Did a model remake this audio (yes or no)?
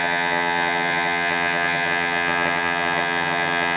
yes